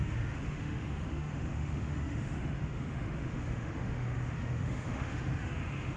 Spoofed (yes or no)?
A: yes